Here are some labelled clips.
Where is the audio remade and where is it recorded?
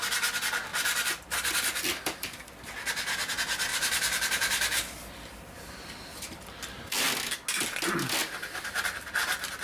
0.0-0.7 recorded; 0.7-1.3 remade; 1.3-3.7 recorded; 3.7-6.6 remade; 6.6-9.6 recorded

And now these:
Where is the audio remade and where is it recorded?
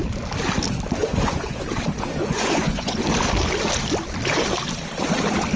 0.0-1.0 recorded; 1.0-1.6 remade; 1.6-2.2 recorded; 2.2-3.0 remade; 3.0-5.6 recorded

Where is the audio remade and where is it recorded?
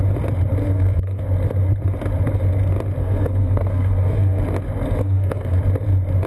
0.0-0.6 recorded; 0.6-1.2 remade; 1.2-3.0 recorded; 3.0-4.4 remade; 4.4-5.0 recorded; 5.0-5.6 remade; 5.6-6.3 recorded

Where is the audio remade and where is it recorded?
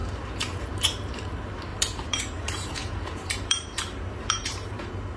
0.0-1.1 remade; 1.1-1.7 recorded; 1.7-4.8 remade; 4.8-5.2 recorded